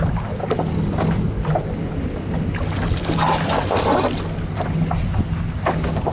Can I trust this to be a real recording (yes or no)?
yes